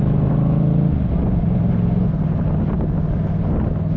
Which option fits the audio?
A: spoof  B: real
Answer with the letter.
B